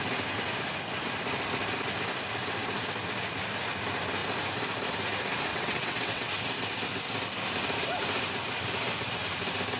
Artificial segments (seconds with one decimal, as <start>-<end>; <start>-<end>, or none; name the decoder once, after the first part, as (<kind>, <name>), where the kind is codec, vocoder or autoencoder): 5.5-6.3 (vocoder, WaveNeXt)